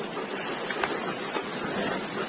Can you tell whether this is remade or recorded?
recorded